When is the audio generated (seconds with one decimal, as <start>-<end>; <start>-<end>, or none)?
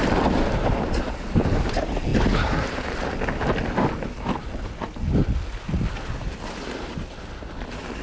none